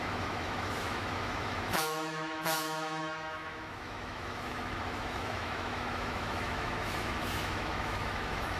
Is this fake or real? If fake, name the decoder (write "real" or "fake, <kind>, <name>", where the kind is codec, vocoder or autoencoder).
fake, autoencoder, DAC-VAE